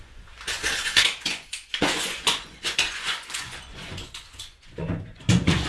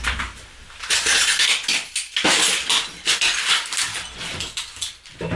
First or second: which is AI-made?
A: first